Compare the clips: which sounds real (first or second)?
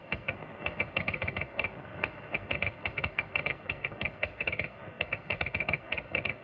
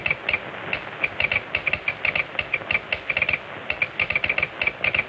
second